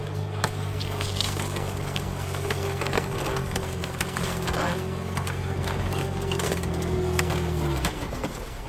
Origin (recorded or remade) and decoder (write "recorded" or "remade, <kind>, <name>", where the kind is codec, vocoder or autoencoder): remade, codec, SNAC